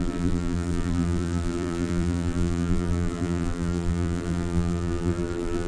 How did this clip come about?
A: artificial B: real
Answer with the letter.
A